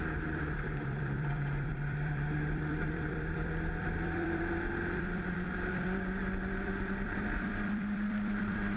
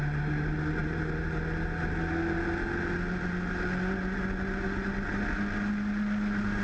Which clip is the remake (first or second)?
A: first